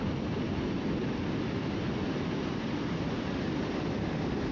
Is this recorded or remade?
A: recorded